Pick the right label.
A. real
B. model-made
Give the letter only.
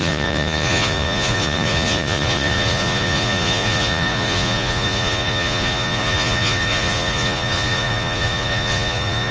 B